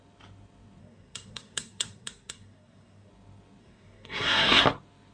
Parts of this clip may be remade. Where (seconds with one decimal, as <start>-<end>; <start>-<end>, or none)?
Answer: 0.8-3.1; 3.6-4.6